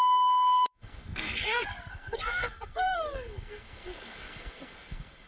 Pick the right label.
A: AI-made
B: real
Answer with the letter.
A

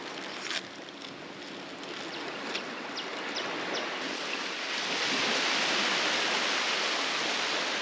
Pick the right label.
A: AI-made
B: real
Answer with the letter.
B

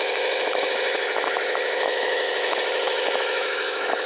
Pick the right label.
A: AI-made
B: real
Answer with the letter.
A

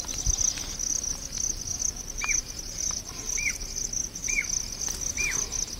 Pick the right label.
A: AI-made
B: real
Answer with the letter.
B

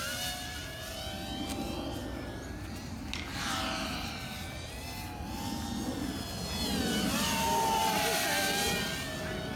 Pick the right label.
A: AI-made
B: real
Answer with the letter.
B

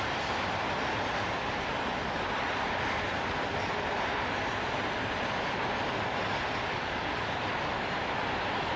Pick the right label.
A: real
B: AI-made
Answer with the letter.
B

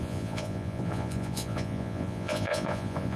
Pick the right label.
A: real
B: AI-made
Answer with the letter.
B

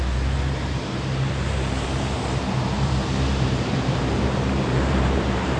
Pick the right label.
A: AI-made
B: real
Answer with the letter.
A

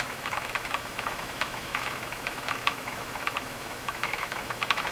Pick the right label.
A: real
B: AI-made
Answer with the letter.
B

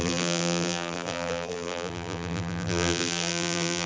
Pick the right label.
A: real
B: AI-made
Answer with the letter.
B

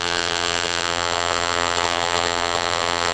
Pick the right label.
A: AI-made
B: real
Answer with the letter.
A